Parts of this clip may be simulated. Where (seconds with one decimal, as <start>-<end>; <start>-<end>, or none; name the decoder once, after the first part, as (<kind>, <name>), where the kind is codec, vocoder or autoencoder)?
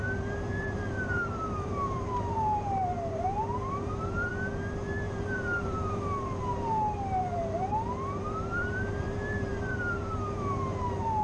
0.0-4.3 (vocoder, BigVGAN v2); 4.9-11.2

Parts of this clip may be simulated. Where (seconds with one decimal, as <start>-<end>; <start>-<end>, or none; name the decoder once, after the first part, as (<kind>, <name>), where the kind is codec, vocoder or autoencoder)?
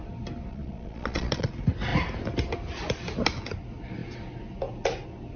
0.5-1.5 (vocoder, Vocos)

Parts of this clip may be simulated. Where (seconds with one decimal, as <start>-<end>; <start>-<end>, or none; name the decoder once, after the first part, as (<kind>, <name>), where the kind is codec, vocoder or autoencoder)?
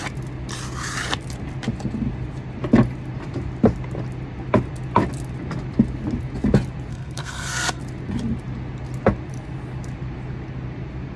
6.9-7.8 (codec, SNAC)